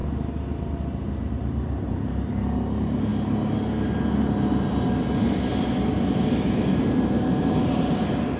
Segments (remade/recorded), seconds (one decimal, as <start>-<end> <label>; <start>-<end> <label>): 0.0-1.2 recorded; 1.2-3.1 remade; 3.1-7.1 recorded; 7.1-8.4 remade

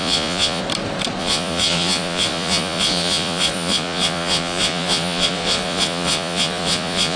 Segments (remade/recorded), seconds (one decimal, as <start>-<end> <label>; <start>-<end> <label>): 0.0-0.6 remade; 0.6-1.2 recorded; 1.2-7.2 remade

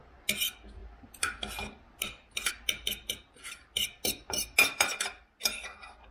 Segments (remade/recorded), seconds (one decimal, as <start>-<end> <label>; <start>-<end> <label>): 0.0-6.1 recorded

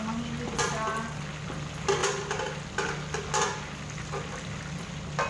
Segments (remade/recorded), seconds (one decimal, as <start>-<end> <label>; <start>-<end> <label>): 0.0-5.3 recorded

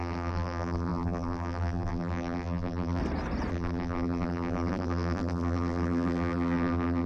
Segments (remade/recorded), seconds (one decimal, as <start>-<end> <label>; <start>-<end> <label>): 0.0-3.0 remade; 3.0-3.5 recorded; 3.5-7.1 remade

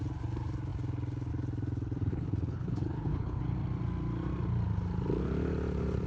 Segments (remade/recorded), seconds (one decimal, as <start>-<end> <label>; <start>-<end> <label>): 0.0-2.1 recorded; 2.1-3.4 remade; 3.4-6.1 recorded